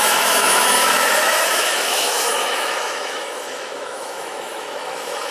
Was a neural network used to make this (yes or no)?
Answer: yes